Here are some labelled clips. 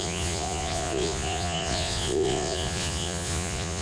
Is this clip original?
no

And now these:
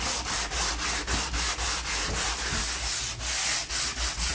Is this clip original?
yes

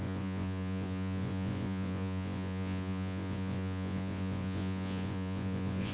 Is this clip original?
no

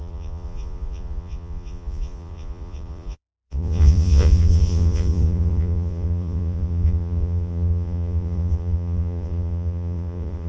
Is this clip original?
no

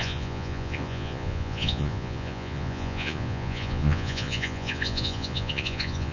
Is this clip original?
no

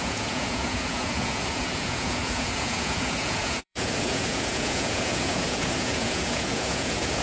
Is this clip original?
no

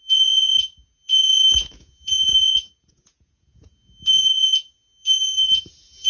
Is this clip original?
no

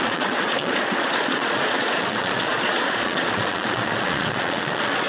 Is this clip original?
no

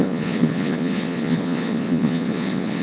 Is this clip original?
no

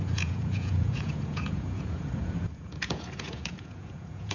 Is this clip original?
no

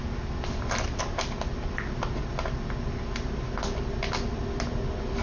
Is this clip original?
yes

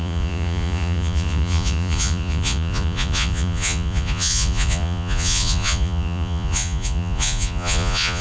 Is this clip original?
no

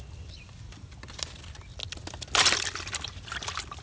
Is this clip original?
yes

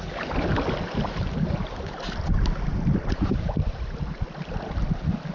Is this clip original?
yes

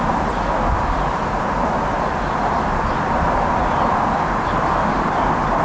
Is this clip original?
yes